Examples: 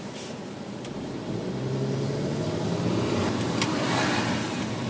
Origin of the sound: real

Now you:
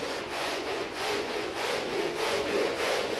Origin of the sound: fake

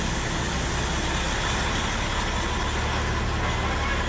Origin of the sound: real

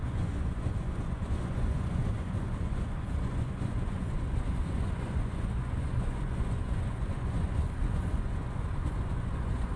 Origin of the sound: fake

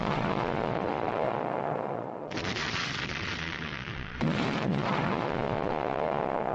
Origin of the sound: fake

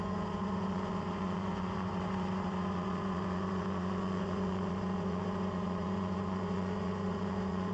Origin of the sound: fake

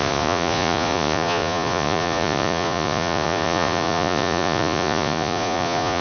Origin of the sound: fake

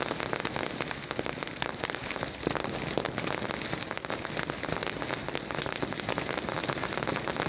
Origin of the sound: real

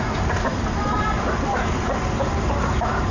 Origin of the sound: real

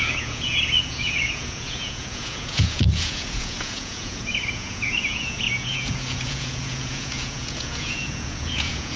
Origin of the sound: fake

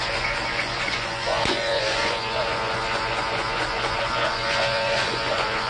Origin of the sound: fake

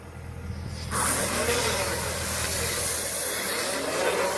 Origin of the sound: real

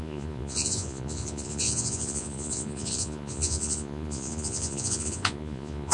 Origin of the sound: fake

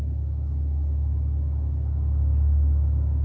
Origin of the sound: real